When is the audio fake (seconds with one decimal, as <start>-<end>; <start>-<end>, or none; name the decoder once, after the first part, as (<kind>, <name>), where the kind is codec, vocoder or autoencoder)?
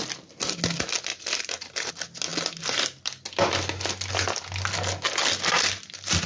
1.1-1.9 (vocoder, BigVGAN v2)